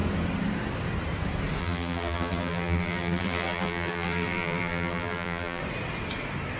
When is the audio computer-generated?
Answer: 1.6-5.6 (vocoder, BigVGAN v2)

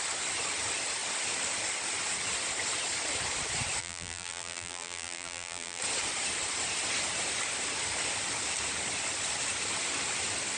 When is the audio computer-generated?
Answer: 3.8-5.8 (vocoder, BigVGAN v2)

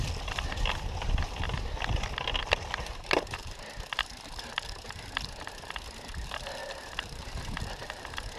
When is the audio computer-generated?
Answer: 0.0-6.6 (vocoder, BigVGAN v2); 7.6-8.4

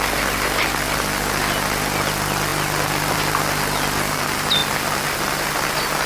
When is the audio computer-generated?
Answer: none

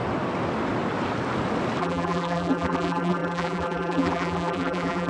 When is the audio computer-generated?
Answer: 1.8-5.1 (vocoder, BigVGAN v2)